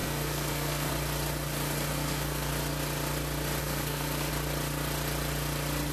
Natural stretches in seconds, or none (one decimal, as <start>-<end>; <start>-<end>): 0.9-1.9; 2.5-3.6; 4.3-5.9